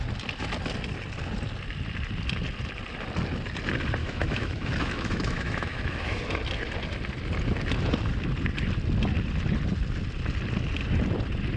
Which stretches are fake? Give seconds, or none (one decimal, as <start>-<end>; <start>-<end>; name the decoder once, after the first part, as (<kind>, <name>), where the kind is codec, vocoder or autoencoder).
4.0-6.2 (autoencoder, DAC-VAE)